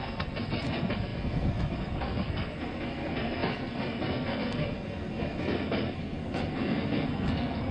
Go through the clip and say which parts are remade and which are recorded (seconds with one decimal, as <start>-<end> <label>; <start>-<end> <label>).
0.0-7.7 remade